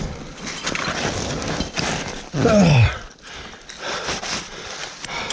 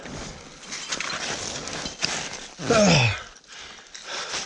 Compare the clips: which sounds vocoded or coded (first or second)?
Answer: first